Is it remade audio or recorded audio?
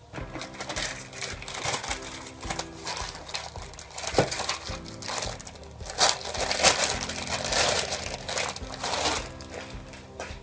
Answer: recorded